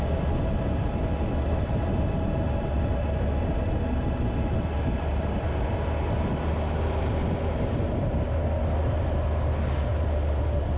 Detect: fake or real real